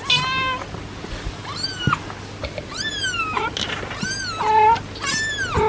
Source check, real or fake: real